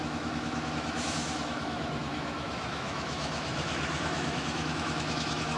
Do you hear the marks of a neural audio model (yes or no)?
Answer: yes